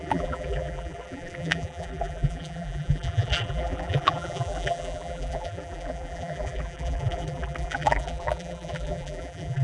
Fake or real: fake